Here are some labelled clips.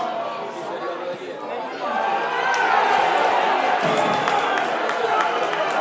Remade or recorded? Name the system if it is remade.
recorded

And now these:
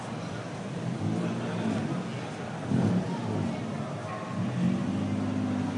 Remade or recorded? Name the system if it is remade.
recorded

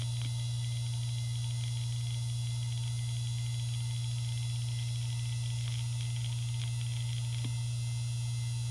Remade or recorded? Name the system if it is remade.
recorded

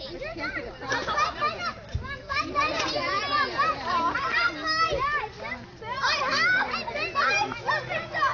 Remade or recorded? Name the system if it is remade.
recorded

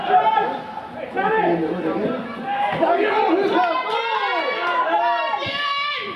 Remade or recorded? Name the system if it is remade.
recorded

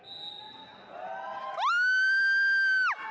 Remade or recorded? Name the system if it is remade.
recorded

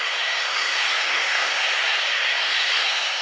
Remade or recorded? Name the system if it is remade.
remade, codec, SNAC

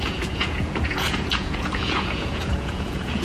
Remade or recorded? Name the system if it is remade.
remade, vocoder, Vocos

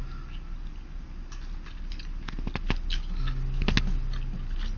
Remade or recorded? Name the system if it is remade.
recorded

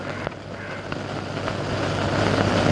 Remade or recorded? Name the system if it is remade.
recorded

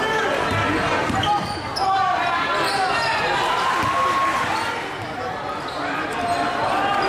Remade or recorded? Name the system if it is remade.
recorded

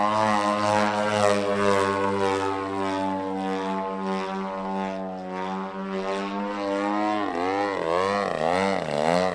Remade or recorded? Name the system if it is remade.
recorded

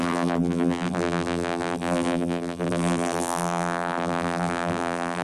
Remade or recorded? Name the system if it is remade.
remade, vocoder, BigVGAN v2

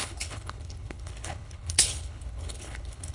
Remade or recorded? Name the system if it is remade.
remade, codec, HILCodec